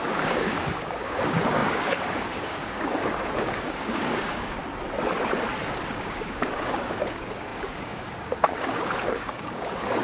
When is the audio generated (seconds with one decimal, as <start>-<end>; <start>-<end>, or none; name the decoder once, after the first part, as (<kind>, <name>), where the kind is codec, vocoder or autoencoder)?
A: 0.0-4.6 (codec, DAC); 5.9-10.0